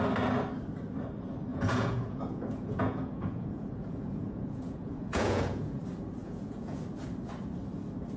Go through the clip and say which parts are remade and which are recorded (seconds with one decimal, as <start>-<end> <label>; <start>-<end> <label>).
0.0-1.5 recorded; 1.5-5.8 remade; 5.8-6.2 recorded; 6.2-6.8 remade; 6.8-8.2 recorded